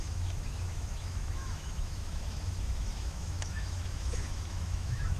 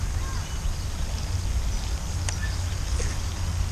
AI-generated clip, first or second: first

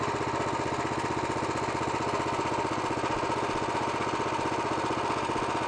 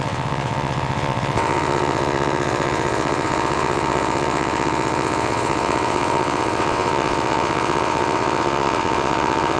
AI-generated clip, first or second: second